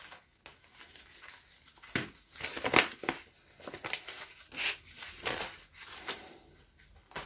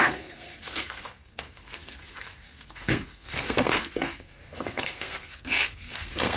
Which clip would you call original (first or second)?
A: first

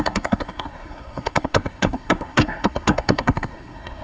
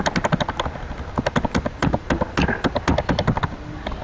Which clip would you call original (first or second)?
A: second